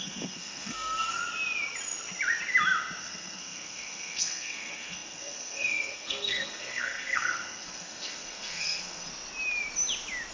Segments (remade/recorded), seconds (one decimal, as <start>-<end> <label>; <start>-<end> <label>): 0.0-1.2 remade; 1.2-3.0 recorded; 3.0-9.1 remade; 9.1-10.3 recorded